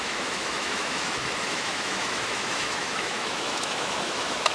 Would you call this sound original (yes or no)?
no